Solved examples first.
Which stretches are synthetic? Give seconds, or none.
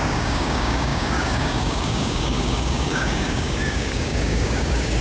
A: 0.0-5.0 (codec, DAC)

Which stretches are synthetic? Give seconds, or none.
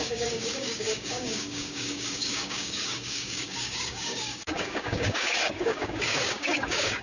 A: 0.0-7.0 (codec, DAC)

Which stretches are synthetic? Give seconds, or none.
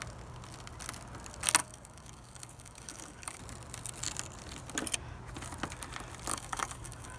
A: 1.6-3.4 (codec, DAC); 6.3-7.2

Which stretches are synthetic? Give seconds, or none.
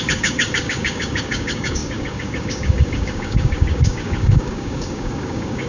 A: 0.0-5.7 (codec, DAC)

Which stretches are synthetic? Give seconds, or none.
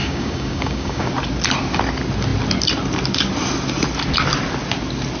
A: 0.0-1.1 (codec, DAC)